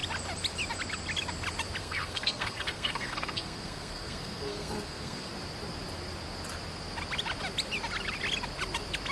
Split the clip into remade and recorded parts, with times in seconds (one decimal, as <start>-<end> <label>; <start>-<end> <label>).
0.0-1.8 recorded; 1.8-5.3 remade; 5.3-9.1 recorded